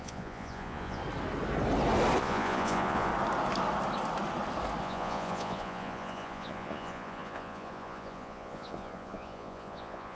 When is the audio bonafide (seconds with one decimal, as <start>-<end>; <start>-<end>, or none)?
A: 1.0-2.2; 3.1-4.8